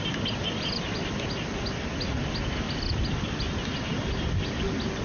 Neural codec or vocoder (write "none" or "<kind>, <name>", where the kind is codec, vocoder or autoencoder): none